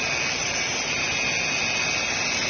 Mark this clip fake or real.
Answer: real